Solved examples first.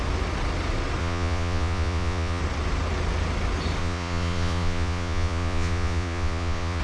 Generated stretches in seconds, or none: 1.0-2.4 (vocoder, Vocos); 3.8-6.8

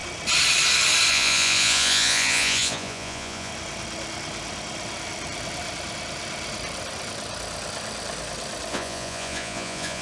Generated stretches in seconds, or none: 1.1-3.5 (vocoder, Vocos); 8.7-10.0

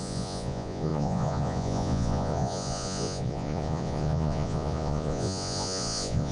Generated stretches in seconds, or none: 0.0-6.3 (vocoder, Vocos)

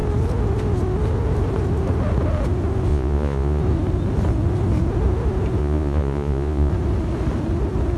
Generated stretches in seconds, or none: 2.9-3.6 (vocoder, Vocos); 5.6-6.7

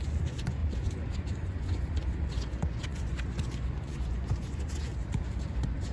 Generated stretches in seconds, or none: 0.0-4.9 (vocoder, Vocos); 5.5-5.9